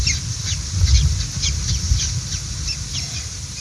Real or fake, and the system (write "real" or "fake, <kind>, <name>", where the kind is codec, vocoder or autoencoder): real